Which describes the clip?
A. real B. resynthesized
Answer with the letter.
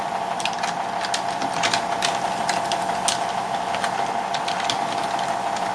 A